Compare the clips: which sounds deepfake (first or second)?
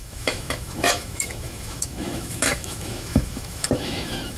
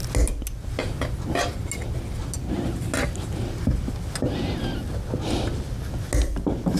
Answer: first